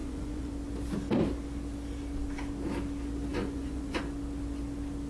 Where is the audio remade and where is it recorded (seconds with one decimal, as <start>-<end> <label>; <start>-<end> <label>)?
0.0-0.5 remade; 0.5-3.3 recorded; 3.3-4.0 remade; 4.0-5.1 recorded